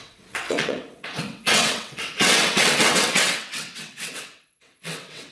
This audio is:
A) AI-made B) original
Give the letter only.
A